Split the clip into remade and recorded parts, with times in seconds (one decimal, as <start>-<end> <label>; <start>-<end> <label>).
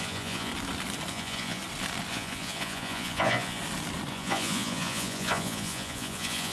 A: 0.0-0.5 remade; 0.5-1.1 recorded; 1.1-1.6 remade; 1.6-2.1 recorded; 2.1-3.6 remade; 3.6-4.1 recorded; 4.1-6.5 remade